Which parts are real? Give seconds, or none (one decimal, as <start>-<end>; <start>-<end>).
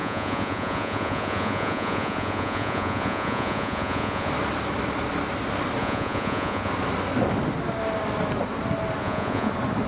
4.3-5.8; 6.7-9.0; 9.5-9.9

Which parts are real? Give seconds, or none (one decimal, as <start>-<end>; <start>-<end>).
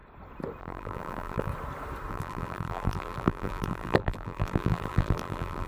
0.0-0.6; 1.5-2.1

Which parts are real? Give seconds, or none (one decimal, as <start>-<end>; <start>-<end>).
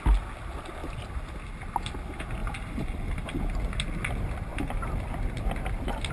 0.0-0.8; 1.3-2.4; 3.4-6.1